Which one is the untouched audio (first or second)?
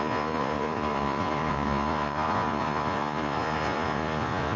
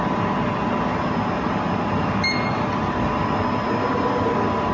second